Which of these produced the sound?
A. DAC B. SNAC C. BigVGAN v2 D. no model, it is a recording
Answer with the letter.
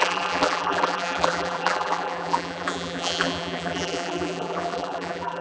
C